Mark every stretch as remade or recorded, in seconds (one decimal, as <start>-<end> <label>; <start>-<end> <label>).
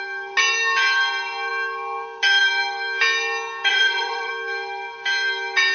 0.0-3.7 recorded; 3.7-4.3 remade; 4.3-5.7 recorded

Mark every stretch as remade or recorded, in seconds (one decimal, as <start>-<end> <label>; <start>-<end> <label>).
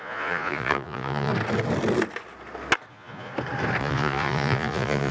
0.0-1.3 remade; 1.3-2.9 recorded; 2.9-3.3 remade; 3.3-3.8 recorded; 3.8-5.1 remade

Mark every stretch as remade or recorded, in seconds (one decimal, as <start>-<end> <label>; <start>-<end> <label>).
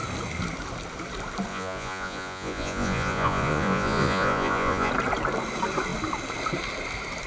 0.0-1.5 recorded; 1.5-4.9 remade; 4.9-7.3 recorded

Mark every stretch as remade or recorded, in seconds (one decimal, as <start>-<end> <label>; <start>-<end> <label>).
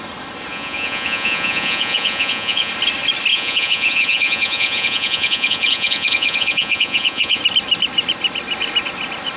0.0-0.5 recorded; 0.5-2.7 remade; 2.7-3.3 recorded; 3.3-7.4 remade; 7.4-9.4 recorded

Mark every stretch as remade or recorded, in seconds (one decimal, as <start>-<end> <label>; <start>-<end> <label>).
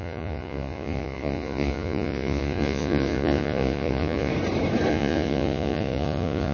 0.0-4.3 remade; 4.3-4.9 recorded; 4.9-6.5 remade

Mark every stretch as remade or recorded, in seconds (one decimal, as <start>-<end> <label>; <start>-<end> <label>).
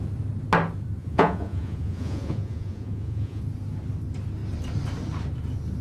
0.0-1.0 recorded; 1.0-3.4 remade; 3.4-5.8 recorded